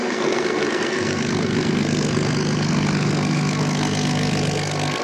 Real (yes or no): no